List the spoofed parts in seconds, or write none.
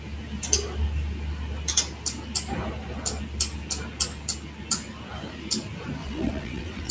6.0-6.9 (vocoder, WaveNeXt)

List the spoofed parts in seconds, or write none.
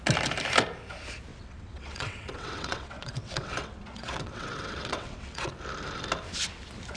1.3-5.5 (vocoder, WaveNeXt)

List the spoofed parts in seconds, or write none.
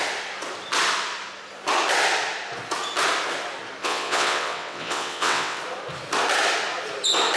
3.8-5.6 (vocoder, WaveNeXt)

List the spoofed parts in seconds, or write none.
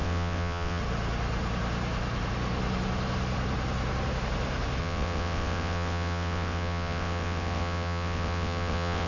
0.0-0.8 (vocoder, WaveNeXt); 4.8-9.1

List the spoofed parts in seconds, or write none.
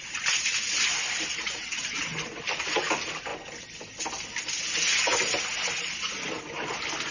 1.3-2.0 (vocoder, WaveNeXt)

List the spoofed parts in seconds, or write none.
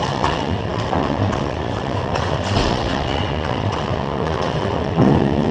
0.0-5.5 (vocoder, WaveNeXt)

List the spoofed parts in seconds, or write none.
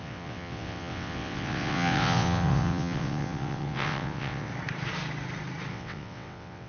0.0-4.5 (vocoder, WaveNeXt); 5.7-6.7